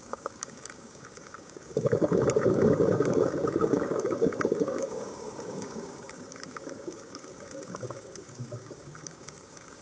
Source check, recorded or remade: remade